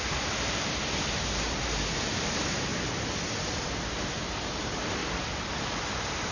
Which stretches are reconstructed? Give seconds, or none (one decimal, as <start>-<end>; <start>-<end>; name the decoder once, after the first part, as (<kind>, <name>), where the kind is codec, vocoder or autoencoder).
0.0-2.7 (vocoder, BigVGAN v2); 3.5-5.0; 5.5-6.3

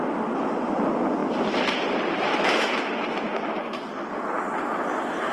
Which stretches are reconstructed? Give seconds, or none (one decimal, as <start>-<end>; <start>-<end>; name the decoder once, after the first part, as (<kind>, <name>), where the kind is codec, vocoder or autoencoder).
none

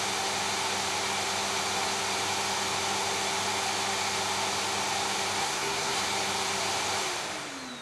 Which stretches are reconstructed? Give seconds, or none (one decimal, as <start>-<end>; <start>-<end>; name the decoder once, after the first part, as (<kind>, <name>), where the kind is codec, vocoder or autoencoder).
5.4-6.0 (codec, SNAC)